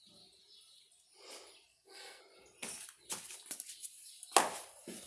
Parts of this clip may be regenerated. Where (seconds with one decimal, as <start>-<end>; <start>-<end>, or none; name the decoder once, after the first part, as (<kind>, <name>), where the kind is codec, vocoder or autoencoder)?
1.7-2.2 (codec, SNAC)